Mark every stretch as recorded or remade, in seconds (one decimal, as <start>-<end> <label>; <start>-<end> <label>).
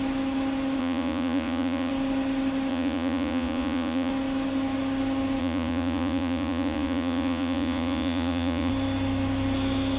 0.0-0.8 recorded; 0.8-1.9 remade; 1.9-2.7 recorded; 2.7-4.1 remade; 4.1-5.4 recorded; 5.4-8.7 remade; 8.7-10.0 recorded